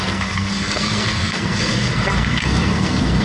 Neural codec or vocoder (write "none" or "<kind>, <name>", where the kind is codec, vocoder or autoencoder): codec, SNAC